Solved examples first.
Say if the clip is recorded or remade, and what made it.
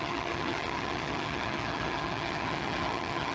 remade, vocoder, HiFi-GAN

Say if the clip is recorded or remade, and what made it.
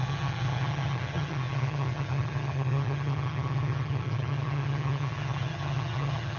remade, vocoder, HiFi-GAN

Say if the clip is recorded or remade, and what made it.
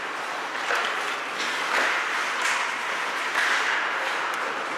remade, vocoder, BigVGAN v2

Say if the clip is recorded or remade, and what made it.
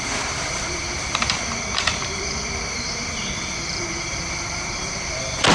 remade, vocoder, BigVGAN v2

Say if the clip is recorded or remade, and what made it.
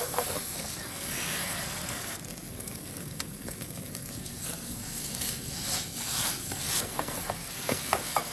remade, codec, SNAC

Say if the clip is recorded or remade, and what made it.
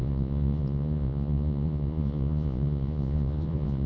remade, vocoder, Vocos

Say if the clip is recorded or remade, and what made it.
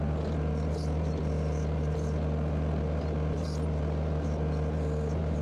recorded